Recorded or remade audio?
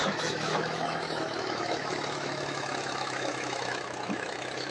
remade